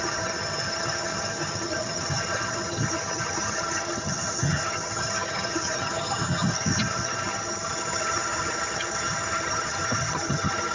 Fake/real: fake